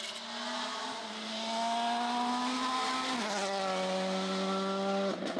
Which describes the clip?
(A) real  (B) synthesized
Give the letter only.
A